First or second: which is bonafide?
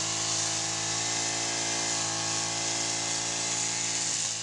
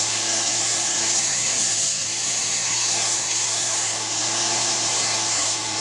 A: first